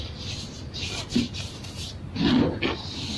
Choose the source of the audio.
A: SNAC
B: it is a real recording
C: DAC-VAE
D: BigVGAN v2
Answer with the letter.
B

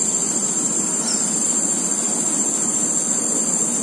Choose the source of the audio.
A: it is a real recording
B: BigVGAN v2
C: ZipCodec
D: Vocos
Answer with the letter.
A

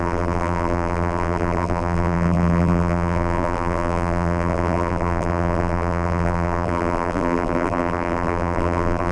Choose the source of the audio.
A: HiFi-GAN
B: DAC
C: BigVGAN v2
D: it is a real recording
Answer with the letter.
C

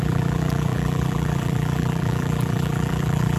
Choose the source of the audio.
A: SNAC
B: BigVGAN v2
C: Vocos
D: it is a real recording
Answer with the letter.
B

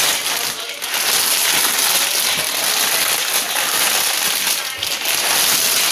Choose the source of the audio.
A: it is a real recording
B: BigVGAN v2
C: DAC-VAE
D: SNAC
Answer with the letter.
A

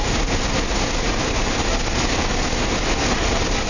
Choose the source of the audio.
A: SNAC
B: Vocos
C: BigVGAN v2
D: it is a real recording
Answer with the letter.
D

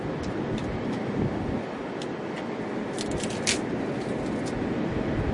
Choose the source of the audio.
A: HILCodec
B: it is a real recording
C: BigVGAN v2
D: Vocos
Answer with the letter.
B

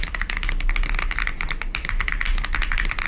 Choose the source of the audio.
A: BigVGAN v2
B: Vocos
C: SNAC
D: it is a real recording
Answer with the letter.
D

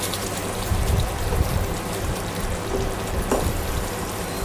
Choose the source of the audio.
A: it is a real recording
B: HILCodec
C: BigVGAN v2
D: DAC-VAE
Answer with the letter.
C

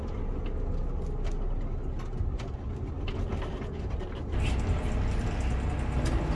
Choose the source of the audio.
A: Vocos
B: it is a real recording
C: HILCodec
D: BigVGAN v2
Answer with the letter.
B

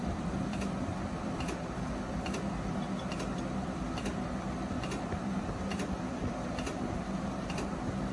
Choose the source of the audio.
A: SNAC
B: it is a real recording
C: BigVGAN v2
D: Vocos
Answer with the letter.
C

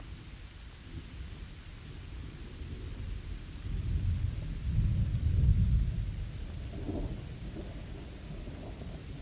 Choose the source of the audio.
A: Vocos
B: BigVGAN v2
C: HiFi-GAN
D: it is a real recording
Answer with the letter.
D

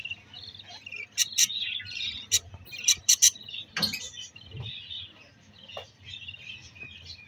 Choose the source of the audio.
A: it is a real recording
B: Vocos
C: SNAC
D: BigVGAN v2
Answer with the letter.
A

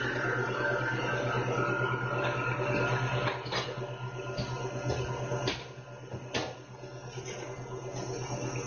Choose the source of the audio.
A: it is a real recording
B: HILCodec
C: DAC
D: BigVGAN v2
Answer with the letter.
A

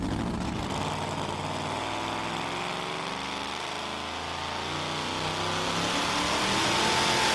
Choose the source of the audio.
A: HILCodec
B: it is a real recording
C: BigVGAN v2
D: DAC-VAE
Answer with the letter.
B